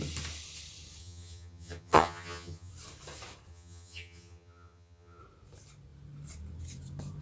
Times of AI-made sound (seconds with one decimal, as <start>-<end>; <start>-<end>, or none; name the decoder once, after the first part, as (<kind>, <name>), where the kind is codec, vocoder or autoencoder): 1.0-2.7 (vocoder, HiFi-GAN); 3.5-5.2